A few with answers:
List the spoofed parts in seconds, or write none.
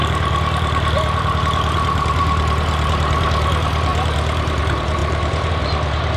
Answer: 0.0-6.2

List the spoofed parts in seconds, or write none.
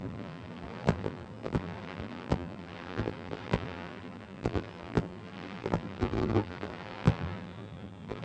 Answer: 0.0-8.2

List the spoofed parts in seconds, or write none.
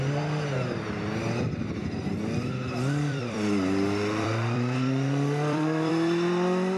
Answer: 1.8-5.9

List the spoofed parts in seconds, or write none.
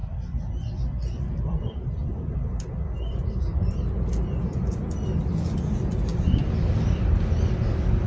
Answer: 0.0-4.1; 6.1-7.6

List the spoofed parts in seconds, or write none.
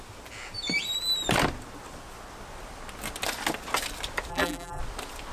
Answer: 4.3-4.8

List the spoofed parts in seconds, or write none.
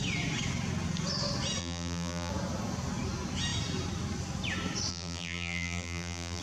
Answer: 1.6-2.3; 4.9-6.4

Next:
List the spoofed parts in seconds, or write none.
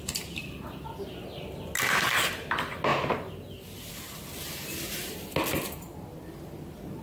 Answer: none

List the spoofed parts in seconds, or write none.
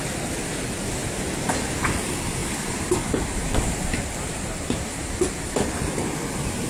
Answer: 1.0-1.6; 2.4-5.2